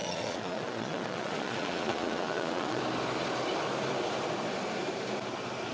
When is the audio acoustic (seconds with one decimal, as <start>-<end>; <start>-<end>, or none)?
2.8-5.7